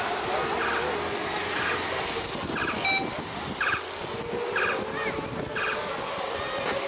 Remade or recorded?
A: recorded